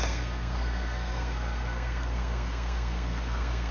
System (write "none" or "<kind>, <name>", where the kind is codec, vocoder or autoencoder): codec, SNAC